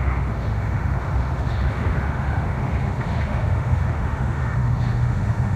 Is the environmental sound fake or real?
fake